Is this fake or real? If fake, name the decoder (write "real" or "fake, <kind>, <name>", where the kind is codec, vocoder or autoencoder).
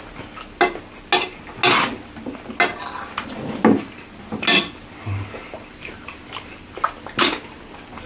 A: real